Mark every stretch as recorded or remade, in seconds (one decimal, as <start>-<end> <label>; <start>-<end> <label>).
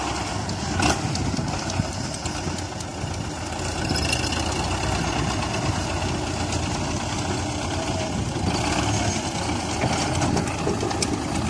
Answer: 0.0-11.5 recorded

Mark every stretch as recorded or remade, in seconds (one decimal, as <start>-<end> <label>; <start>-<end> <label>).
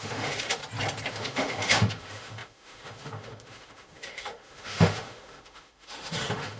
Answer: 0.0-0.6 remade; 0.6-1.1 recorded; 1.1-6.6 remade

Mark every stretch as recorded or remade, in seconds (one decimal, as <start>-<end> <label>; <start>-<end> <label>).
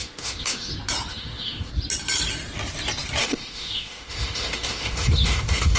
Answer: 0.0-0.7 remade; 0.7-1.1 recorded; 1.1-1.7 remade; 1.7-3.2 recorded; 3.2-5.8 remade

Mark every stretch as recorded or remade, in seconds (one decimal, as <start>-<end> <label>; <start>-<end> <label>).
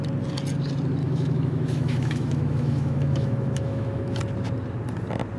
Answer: 0.0-1.0 recorded; 1.0-4.2 remade; 4.2-5.4 recorded